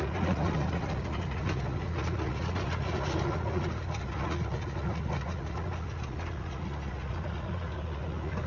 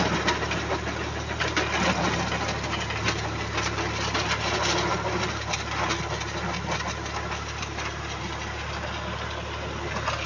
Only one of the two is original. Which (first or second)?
second